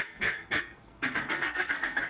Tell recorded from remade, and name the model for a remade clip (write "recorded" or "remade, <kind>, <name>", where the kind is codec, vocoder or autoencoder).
remade, codec, SNAC